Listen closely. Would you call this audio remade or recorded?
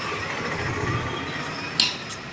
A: recorded